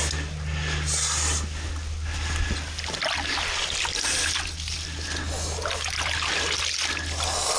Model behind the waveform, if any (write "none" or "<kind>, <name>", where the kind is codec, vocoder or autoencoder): none